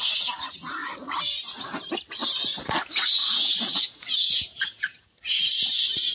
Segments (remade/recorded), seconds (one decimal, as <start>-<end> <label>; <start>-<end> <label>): 0.0-3.2 recorded; 3.2-5.2 remade; 5.2-6.1 recorded